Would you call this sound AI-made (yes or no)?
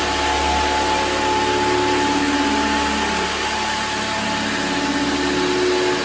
no